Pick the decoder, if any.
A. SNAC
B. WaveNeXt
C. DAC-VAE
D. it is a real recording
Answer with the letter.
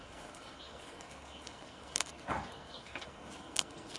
A